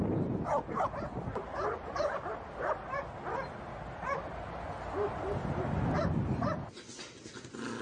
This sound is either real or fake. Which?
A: real